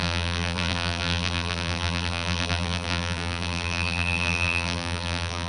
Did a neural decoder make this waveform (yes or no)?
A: yes